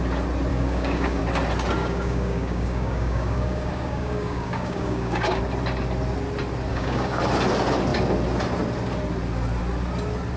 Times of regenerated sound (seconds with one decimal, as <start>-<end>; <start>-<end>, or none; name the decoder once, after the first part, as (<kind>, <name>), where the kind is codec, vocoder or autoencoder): 0.5-1.2 (codec, DAC); 1.8-5.4; 6.7-7.2